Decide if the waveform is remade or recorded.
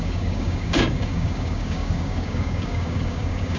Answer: remade